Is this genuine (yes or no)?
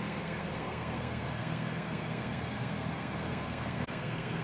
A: no